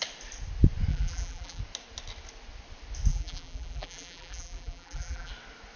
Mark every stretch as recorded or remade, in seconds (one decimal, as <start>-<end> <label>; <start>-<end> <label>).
0.0-0.9 recorded; 0.9-1.6 remade; 1.6-3.1 recorded; 3.1-5.3 remade; 5.3-5.8 recorded